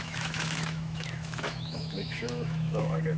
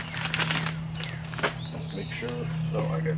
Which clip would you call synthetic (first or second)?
first